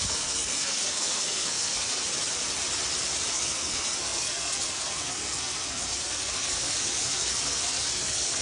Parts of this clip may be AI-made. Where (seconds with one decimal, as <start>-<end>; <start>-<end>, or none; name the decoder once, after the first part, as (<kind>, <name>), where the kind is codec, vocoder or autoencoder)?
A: 0.0-2.0 (codec, SNAC); 3.3-8.4

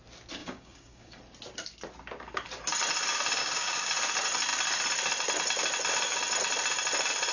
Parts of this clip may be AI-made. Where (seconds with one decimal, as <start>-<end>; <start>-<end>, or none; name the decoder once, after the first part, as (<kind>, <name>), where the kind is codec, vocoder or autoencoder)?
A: 0.4-1.2 (codec, DAC); 3.4-3.9

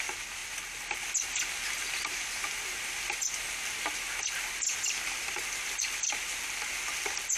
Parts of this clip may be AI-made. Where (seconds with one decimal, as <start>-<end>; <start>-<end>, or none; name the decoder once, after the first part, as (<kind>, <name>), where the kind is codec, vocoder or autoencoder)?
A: 0.0-0.4 (vocoder, BigVGAN v2); 4.8-7.4